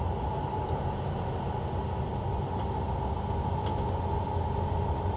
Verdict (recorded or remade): recorded